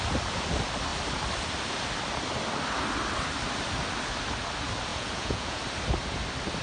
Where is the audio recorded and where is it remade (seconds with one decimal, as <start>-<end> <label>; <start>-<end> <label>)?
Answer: 0.0-4.9 recorded; 4.9-5.6 remade; 5.6-6.6 recorded